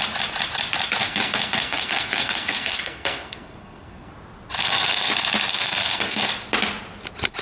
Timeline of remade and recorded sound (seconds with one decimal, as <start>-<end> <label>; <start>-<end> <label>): 0.0-1.0 recorded; 1.0-4.1 remade; 4.1-4.6 recorded; 4.6-5.1 remade; 5.1-5.5 recorded; 5.5-6.3 remade; 6.3-7.4 recorded